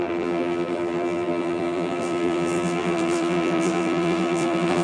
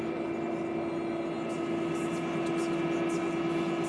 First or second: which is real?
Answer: second